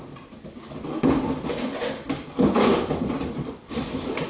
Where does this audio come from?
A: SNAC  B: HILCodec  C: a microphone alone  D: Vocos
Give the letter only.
C